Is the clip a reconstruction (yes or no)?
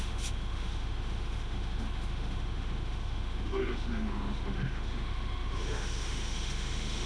yes